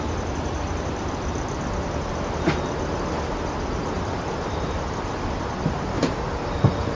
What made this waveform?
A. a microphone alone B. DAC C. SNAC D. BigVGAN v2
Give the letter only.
A